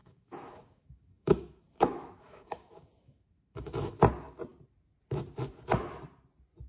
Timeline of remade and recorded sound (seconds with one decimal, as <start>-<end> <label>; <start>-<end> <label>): 0.0-4.0 remade; 4.0-6.7 recorded